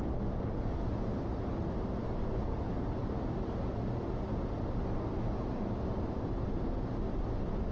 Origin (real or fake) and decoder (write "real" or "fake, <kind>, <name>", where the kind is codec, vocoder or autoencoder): real